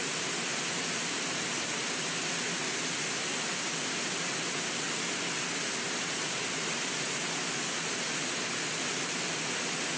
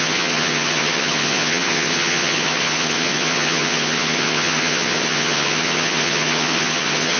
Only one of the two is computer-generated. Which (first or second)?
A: second